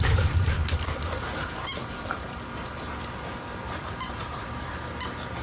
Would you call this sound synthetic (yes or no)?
yes